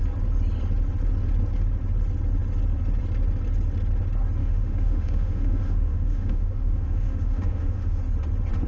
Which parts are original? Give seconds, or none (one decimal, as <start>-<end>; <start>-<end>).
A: 0.0-4.4; 8.0-8.7